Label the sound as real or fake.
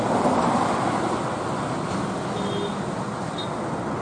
real